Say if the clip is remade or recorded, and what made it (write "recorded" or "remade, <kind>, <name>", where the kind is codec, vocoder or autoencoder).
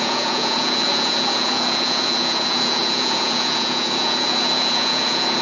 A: remade, vocoder, Vocos